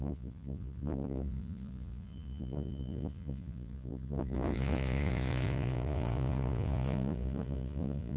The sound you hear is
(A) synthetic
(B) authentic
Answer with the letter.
A